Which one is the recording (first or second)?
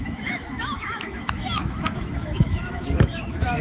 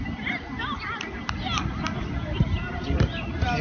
second